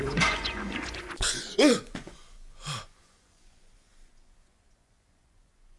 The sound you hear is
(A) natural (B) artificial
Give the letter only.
B